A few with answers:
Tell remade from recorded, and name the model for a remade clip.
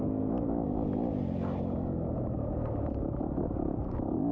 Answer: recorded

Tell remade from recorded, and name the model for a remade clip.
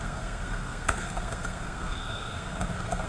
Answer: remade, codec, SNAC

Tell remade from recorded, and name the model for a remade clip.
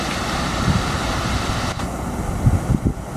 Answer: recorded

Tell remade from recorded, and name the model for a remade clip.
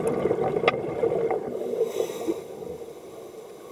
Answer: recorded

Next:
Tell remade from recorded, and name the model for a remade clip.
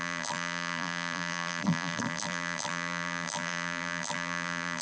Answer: remade, vocoder, BigVGAN v2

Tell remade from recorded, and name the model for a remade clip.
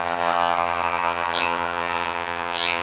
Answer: remade, vocoder, HiFi-GAN